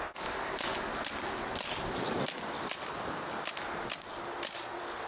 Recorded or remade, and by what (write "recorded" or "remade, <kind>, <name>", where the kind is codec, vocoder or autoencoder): recorded